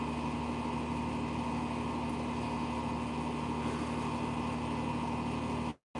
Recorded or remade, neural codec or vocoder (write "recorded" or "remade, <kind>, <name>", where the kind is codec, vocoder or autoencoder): recorded